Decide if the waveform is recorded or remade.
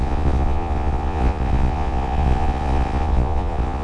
remade